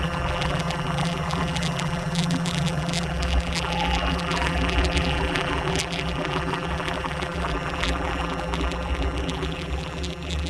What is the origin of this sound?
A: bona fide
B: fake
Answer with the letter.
B